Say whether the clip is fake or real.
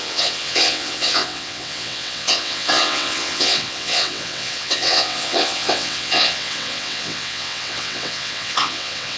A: fake